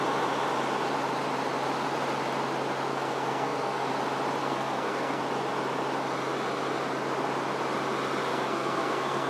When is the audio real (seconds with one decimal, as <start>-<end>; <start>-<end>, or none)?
0.0-2.9; 3.9-4.4; 5.2-8.3